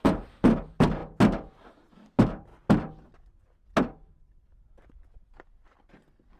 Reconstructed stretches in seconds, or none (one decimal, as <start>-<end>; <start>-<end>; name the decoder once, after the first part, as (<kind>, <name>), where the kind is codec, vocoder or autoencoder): 0.0-1.0 (vocoder, BigVGAN v2); 1.9-2.5; 4.2-6.4